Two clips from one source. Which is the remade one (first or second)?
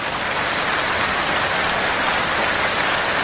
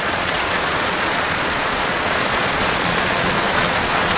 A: second